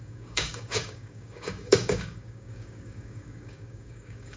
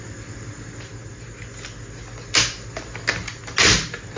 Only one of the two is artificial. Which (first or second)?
first